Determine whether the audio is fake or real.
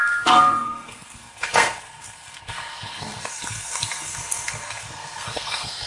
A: fake